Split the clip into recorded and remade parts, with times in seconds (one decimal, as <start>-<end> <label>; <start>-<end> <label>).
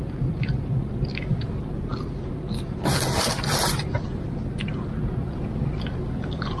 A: 0.0-1.9 remade; 1.9-3.3 recorded; 3.3-6.6 remade